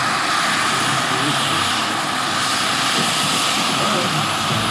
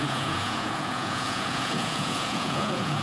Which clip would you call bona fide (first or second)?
first